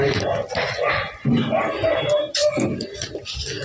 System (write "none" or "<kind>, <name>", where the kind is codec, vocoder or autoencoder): none